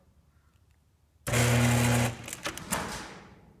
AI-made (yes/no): no